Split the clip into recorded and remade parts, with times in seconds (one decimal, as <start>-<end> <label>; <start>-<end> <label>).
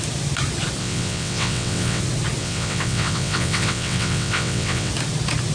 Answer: 0.0-0.8 recorded; 0.8-2.0 remade; 2.0-2.4 recorded; 2.4-4.9 remade; 4.9-5.5 recorded